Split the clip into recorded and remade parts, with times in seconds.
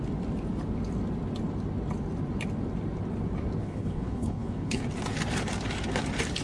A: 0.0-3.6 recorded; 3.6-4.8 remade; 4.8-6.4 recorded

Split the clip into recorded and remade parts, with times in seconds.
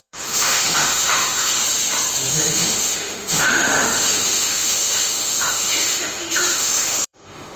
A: 0.0-1.6 remade; 1.6-2.3 recorded; 2.3-7.6 remade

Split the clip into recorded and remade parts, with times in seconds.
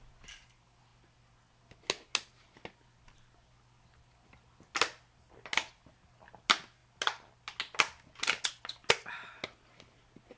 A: 0.0-10.4 recorded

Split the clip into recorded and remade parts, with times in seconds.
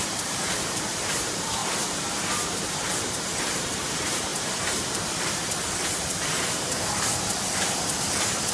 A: 0.0-8.5 remade